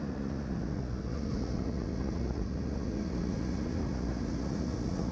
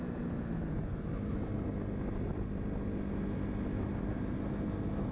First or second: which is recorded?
second